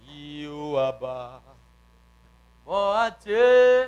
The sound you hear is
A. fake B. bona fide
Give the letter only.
B